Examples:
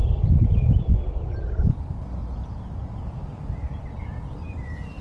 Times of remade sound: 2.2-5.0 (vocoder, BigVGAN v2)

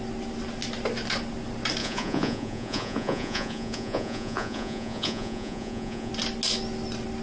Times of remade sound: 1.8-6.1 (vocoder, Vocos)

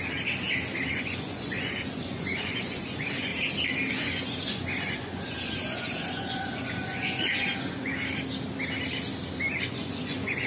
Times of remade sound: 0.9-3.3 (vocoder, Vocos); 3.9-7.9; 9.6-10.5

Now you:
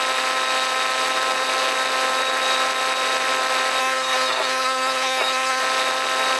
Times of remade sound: 3.8-5.6 (codec, SNAC)

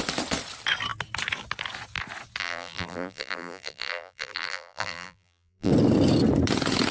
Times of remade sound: 2.4-5.7 (vocoder, BigVGAN v2)

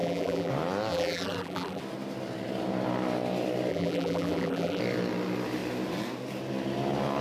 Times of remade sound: 0.0-0.5 (vocoder, BigVGAN v2); 0.9-1.8; 3.7-4.8